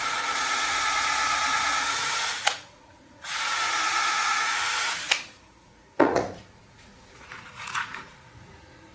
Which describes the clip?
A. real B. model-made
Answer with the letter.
B